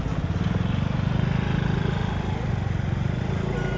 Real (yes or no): yes